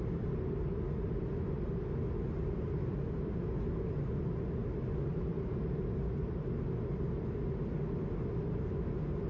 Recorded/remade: recorded